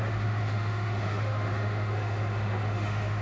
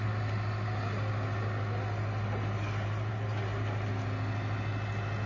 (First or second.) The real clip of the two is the second